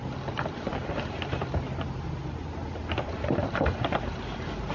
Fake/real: real